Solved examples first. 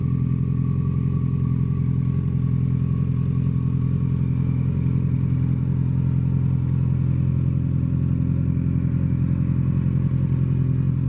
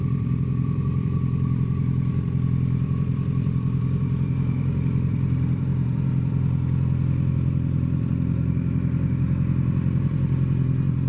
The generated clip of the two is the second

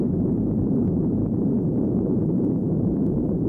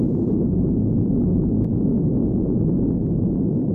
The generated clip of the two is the first